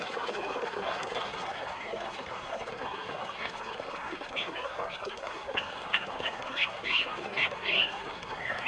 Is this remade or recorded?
remade